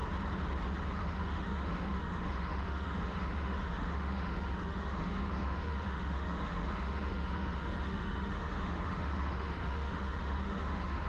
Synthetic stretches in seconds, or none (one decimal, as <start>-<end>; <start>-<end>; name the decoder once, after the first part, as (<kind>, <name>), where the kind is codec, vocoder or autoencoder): 0.9-11.1 (autoencoder, DAC-VAE)